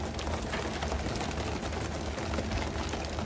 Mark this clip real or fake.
real